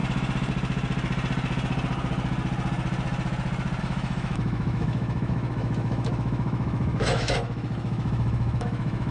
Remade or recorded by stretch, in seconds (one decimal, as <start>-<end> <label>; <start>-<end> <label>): 0.0-3.8 recorded; 3.8-9.1 remade